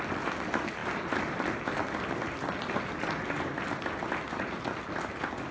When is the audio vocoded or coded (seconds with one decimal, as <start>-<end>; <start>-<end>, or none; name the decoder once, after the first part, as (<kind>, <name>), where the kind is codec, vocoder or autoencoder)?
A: none